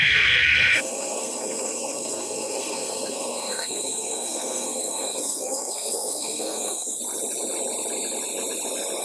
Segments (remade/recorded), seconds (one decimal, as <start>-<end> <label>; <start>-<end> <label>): 0.0-7.0 remade; 7.0-9.0 recorded